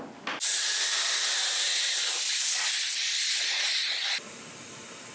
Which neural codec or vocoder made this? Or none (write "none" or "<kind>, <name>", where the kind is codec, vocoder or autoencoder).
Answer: none